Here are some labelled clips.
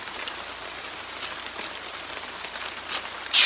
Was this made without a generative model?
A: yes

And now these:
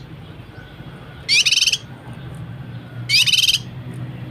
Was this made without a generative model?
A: yes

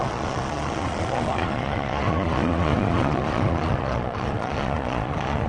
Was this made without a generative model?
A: no